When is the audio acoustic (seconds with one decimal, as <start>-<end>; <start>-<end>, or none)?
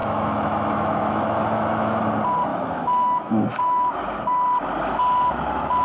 2.1-2.5; 4.0-5.8